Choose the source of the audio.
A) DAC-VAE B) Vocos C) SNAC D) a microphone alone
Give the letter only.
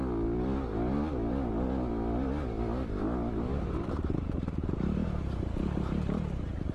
D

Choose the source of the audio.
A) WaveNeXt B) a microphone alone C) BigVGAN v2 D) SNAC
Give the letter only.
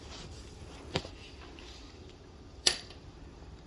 C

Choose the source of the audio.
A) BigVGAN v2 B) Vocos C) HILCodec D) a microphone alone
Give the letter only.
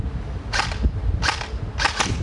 D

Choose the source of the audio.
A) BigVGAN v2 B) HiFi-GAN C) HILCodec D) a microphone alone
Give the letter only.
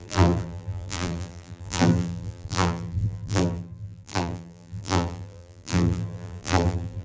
A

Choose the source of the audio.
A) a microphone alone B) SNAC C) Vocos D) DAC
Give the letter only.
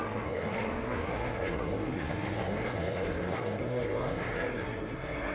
B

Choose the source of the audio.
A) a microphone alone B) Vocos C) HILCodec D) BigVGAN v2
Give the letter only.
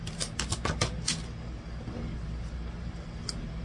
A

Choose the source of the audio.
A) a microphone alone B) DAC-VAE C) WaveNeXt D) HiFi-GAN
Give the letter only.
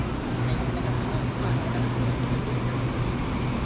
A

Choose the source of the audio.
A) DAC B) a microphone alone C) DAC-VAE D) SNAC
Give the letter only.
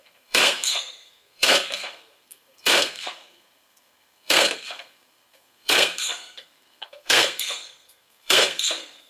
D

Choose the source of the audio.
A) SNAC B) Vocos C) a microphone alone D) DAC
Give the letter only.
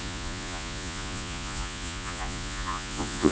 B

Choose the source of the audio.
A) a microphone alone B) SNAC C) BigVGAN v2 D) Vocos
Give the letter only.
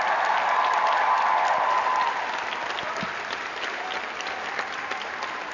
C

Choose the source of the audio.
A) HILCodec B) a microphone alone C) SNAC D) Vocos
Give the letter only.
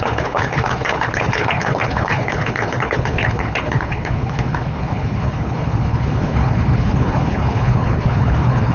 A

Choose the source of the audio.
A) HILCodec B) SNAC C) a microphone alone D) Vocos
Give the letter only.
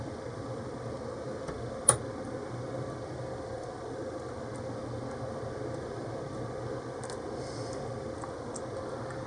C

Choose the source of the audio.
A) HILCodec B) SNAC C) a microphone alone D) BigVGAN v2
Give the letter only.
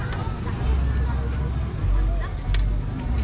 C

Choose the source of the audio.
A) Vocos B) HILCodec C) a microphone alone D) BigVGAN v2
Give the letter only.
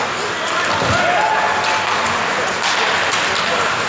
C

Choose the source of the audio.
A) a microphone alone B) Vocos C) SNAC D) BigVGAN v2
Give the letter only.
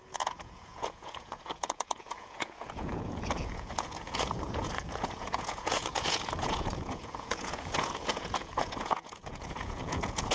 B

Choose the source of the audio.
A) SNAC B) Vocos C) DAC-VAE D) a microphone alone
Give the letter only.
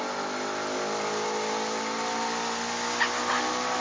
D